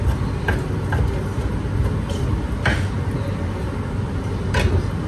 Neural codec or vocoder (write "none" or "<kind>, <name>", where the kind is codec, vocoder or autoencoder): none